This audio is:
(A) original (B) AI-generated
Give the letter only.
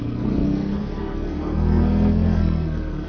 B